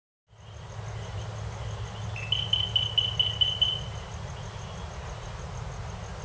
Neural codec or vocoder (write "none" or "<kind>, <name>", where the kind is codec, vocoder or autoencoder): none